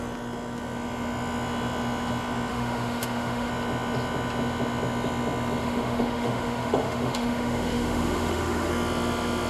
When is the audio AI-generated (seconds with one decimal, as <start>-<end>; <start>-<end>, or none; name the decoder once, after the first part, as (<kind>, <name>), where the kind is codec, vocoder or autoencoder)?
2.5-3.5 (autoencoder, DAC-VAE); 5.6-8.7